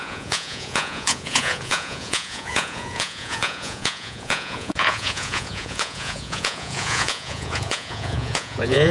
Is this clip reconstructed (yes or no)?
yes